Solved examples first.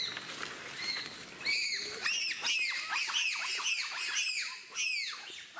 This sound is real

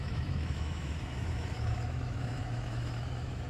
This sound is fake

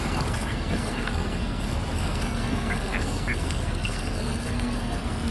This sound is fake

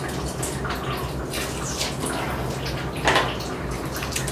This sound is real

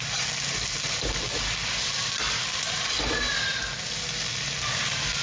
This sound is real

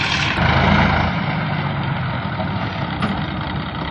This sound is real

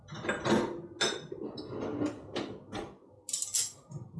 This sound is real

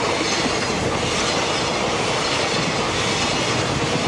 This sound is real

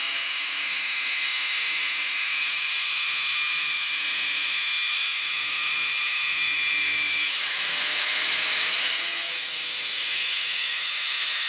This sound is fake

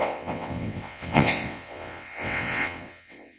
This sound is fake